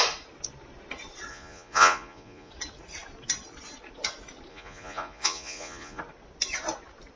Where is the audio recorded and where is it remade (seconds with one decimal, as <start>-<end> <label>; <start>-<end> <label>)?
0.0-1.3 recorded; 1.3-2.5 remade; 2.5-4.5 recorded; 4.5-6.0 remade; 6.0-7.2 recorded